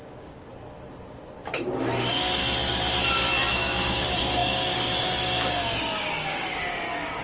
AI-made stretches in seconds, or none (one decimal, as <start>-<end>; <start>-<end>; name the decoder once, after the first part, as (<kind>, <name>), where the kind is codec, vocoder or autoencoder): 0.0-0.5 (codec, DAC); 2.0-2.4; 3.5-7.2